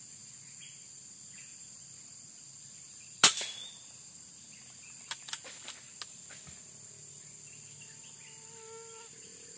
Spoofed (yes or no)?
no